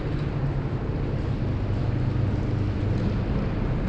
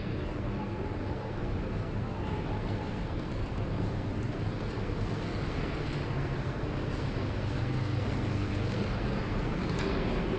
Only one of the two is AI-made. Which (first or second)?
second